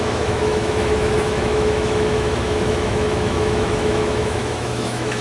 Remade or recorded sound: remade